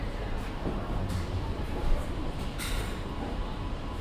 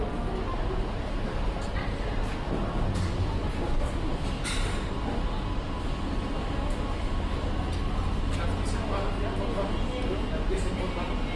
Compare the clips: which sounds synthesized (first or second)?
first